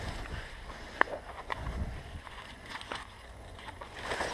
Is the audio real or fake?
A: fake